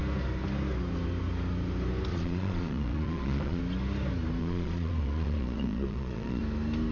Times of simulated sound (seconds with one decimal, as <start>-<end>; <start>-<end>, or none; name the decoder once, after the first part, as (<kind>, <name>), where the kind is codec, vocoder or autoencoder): 2.1-3.6 (vocoder, Vocos); 4.4-6.4